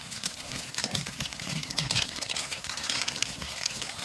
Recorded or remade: remade